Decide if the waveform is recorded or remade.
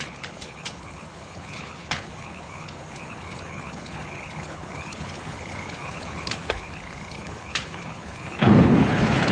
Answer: remade